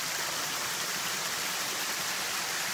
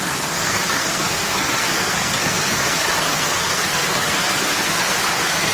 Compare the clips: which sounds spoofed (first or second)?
second